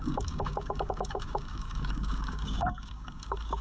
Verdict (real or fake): fake